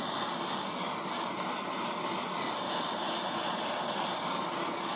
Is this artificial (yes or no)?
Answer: no